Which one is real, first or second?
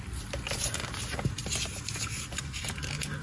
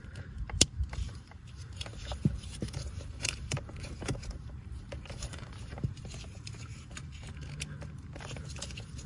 first